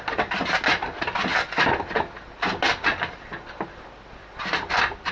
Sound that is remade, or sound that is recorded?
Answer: recorded